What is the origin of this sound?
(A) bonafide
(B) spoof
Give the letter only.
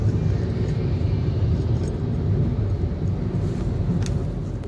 A